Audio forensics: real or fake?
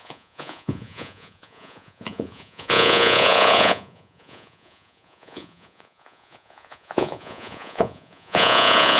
fake